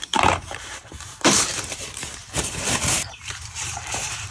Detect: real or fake fake